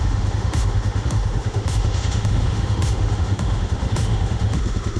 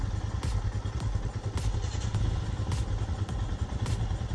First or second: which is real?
second